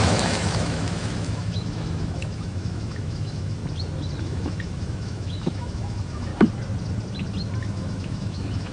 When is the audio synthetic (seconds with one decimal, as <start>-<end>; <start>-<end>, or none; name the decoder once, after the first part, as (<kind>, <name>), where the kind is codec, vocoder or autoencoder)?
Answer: 0.0-3.6 (autoencoder, DAC-VAE); 4.2-6.3; 7.6-8.7